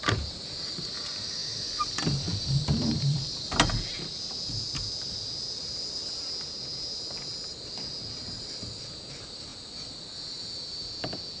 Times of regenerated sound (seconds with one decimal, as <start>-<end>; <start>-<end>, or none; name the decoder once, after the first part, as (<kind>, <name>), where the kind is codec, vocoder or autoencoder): 7.5-8.7 (vocoder, BigVGAN v2)